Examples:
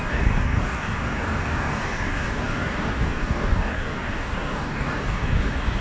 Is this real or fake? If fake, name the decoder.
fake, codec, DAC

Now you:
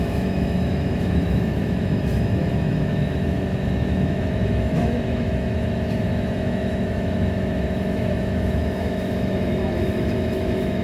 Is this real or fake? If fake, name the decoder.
fake, autoencoder, DAC-VAE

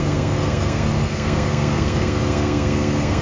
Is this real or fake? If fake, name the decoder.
fake, codec, SNAC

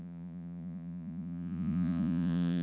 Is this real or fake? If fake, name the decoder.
fake, vocoder, Vocos